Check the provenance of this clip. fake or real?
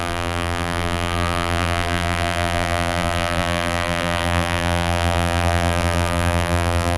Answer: fake